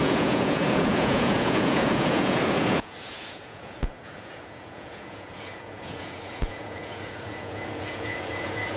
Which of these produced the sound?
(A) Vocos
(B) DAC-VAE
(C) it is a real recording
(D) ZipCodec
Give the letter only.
A